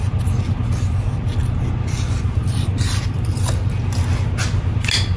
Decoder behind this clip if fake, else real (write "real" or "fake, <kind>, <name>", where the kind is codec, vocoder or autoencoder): real